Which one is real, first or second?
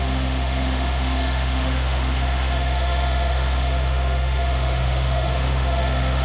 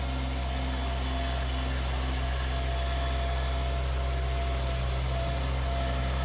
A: second